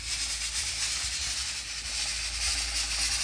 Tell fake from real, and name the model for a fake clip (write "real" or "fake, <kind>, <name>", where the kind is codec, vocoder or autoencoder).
real